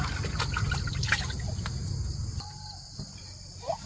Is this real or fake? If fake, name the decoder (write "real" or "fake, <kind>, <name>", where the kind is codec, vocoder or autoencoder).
real